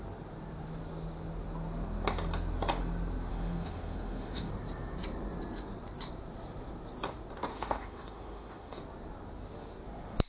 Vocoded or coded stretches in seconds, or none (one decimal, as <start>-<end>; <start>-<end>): 3.3-4.5; 7.5-8.8